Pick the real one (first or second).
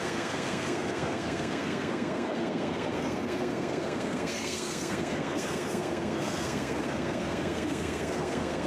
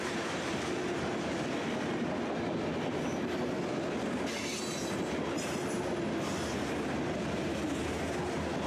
second